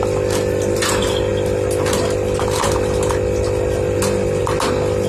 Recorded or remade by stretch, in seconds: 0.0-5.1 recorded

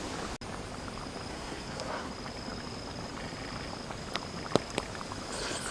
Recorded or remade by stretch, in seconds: 0.0-1.3 recorded; 1.3-2.1 remade; 2.1-5.7 recorded

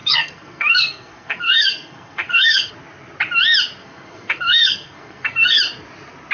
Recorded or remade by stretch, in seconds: 0.0-2.7 remade; 2.7-3.8 recorded; 3.8-5.6 remade; 5.6-6.3 recorded

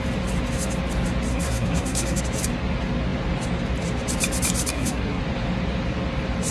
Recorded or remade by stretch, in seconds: 0.0-1.3 recorded; 1.3-2.2 remade; 2.2-4.7 recorded; 4.7-5.2 remade; 5.2-6.5 recorded